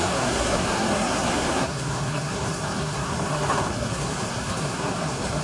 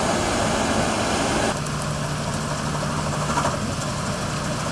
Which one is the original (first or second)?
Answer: second